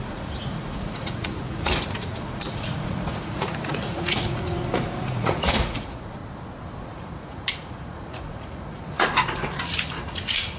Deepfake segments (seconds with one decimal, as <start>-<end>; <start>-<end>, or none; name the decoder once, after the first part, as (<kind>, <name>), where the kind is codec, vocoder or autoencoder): 0.0-6.2 (vocoder, Vocos); 6.8-10.6